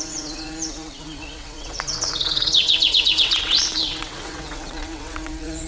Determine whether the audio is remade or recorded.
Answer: remade